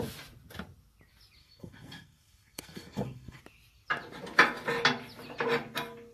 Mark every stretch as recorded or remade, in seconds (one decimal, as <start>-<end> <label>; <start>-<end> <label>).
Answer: 0.0-1.4 recorded; 1.4-3.4 remade; 3.4-6.1 recorded